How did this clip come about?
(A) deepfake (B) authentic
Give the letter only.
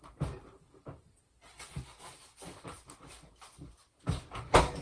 B